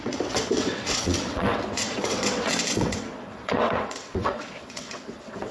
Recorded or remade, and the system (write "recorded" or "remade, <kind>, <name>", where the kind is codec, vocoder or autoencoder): remade, vocoder, WaveNeXt